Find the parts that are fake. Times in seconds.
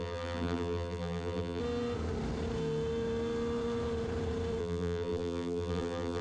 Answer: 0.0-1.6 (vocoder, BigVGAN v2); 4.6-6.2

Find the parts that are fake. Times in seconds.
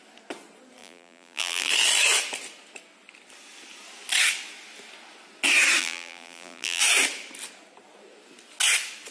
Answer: 0.8-1.7 (vocoder, BigVGAN v2); 5.8-6.8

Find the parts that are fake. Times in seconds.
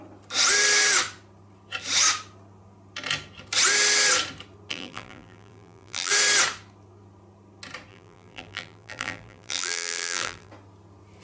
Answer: 4.7-6.1 (vocoder, BigVGAN v2); 7.9-10.5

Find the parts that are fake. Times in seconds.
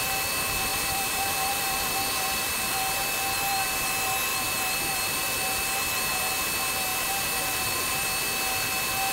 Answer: 0.7-3.0 (vocoder, BigVGAN v2); 6.9-7.9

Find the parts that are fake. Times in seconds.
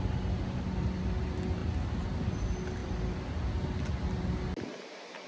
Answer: none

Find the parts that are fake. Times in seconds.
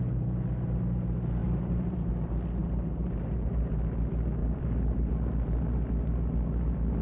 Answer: 1.4-2.1 (vocoder, BigVGAN v2); 2.6-3.8; 4.4-5.1